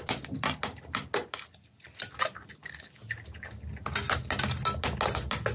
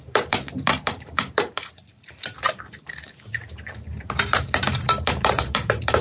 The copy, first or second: second